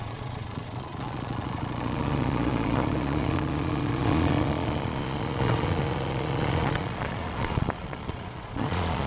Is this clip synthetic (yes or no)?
yes